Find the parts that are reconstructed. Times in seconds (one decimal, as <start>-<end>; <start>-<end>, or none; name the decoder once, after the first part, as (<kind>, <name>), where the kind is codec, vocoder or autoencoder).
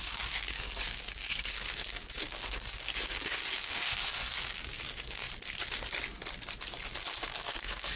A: 0.0-5.2 (codec, DAC); 6.8-8.0